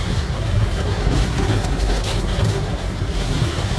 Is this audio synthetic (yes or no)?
yes